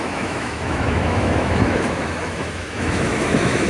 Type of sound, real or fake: fake